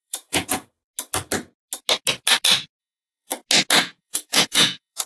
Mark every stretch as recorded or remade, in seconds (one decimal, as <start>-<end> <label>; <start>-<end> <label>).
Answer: 0.0-0.8 remade; 0.8-2.8 recorded; 2.8-3.3 remade; 3.3-3.8 recorded; 3.8-5.1 remade